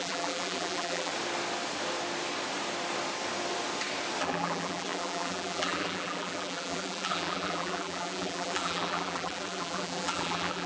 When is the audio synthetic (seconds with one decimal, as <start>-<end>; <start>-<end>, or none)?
0.0-1.1; 4.2-10.7